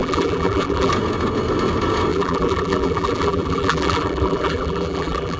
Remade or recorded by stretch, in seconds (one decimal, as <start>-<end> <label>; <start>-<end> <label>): 0.0-0.9 remade; 0.9-2.1 recorded; 2.1-5.4 remade